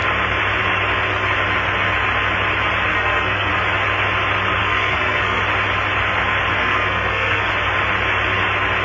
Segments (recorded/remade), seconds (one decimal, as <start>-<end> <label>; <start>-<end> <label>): 0.0-2.9 recorded; 2.9-3.5 remade; 3.5-4.6 recorded; 4.6-5.4 remade; 5.4-6.6 recorded; 6.6-7.5 remade; 7.5-8.8 recorded